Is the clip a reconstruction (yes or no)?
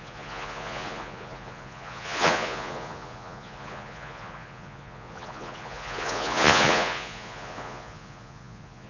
yes